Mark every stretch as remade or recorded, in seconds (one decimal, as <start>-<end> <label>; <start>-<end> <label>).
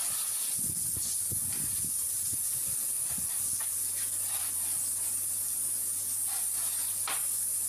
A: 0.0-4.5 remade; 4.5-7.7 recorded